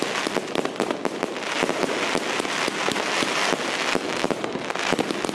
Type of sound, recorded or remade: recorded